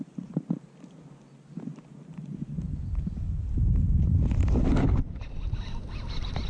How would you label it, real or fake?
real